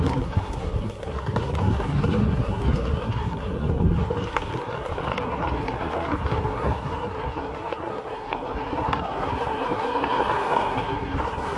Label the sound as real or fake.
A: fake